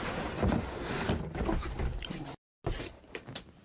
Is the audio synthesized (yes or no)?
no